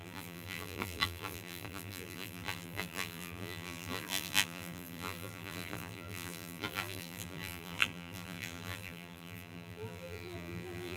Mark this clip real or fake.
fake